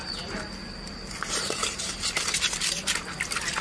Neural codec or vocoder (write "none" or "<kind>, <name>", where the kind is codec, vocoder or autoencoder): none